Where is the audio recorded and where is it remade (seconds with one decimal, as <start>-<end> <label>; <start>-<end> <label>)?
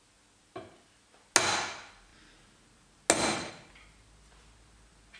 0.0-5.2 recorded